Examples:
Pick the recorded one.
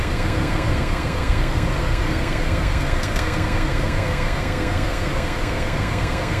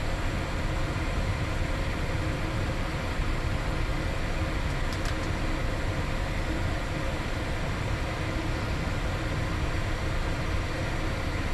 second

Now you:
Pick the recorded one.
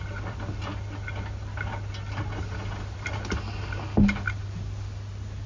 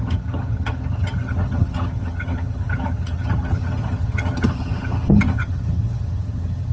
first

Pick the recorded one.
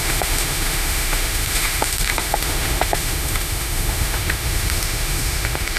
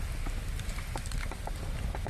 second